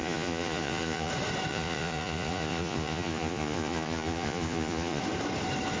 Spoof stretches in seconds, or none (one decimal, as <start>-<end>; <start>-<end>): 0.0-1.1; 1.5-5.0